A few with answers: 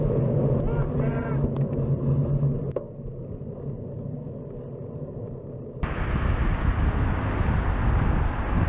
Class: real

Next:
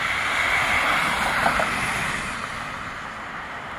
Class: real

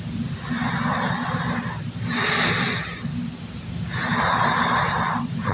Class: real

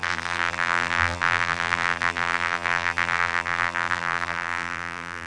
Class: fake